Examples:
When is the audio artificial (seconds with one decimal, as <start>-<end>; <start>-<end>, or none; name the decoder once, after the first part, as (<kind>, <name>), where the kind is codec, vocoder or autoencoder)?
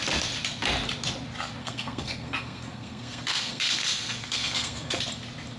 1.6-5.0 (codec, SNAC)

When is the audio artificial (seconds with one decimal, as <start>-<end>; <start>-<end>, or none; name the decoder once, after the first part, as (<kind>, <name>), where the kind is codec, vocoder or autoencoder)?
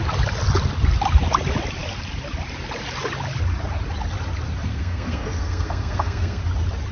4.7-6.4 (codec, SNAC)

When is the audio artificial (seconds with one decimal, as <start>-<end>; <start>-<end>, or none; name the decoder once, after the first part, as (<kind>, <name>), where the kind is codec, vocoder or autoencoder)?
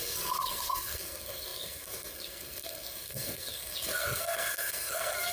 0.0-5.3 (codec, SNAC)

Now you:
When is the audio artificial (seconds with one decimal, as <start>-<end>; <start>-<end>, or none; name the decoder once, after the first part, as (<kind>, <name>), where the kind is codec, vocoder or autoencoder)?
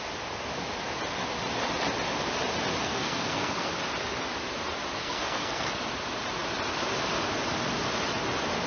2.8-3.7 (codec, SNAC); 5.0-5.7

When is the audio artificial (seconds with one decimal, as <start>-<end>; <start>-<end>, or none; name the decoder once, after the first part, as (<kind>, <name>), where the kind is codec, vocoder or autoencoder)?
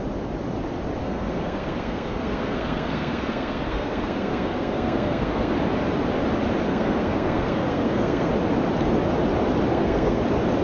1.0-5.5 (codec, SNAC); 6.7-8.3; 9.7-10.2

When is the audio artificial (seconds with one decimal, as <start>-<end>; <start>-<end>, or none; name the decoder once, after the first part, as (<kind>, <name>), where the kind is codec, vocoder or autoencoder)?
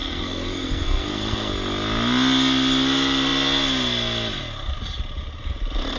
0.0-1.5 (codec, SNAC)